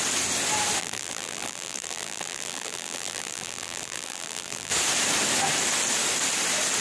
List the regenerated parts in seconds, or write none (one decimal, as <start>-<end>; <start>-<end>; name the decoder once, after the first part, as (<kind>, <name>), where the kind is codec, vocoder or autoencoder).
0.8-4.7 (vocoder, BigVGAN v2)